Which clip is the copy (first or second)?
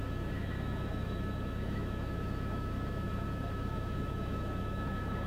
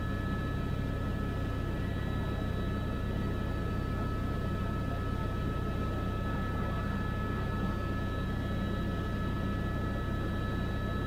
first